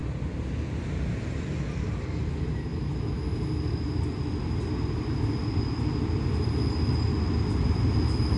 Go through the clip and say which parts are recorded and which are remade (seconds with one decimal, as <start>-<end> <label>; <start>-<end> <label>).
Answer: 0.0-8.4 recorded